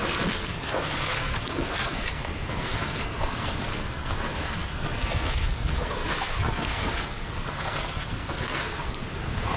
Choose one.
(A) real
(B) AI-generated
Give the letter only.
B